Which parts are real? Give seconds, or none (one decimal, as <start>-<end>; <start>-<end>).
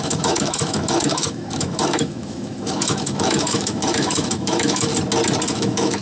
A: 4.9-5.5